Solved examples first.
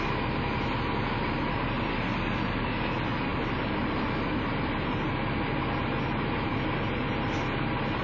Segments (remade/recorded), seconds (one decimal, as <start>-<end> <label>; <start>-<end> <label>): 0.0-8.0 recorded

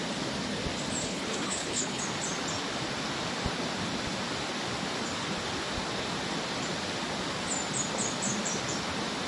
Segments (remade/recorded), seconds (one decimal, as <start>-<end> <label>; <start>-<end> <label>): 0.0-1.0 recorded; 1.0-2.0 remade; 2.0-9.3 recorded

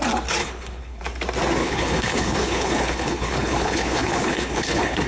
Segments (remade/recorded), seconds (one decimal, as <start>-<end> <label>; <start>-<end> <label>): 0.0-0.4 recorded; 0.4-1.0 remade; 1.0-1.6 recorded; 1.6-5.1 remade

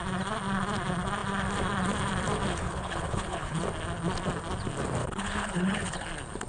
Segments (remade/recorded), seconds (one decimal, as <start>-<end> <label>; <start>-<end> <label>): 0.0-2.5 recorded; 2.5-3.6 remade; 3.6-5.0 recorded; 5.0-6.1 remade; 6.1-6.5 recorded

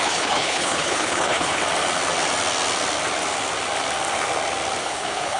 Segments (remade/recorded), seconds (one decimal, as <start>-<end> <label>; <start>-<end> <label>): 0.0-1.6 remade; 1.6-4.8 recorded; 4.8-5.4 remade